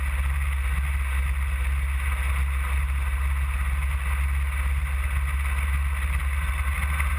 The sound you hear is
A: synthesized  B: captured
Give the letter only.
B